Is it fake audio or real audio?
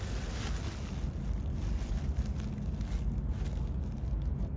real